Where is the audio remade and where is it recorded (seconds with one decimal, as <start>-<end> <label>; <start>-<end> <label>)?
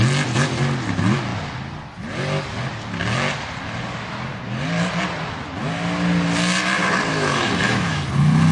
0.0-7.1 recorded; 7.1-8.0 remade; 8.0-8.5 recorded